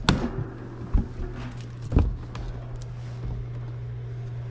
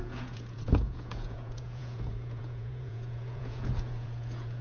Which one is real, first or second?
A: first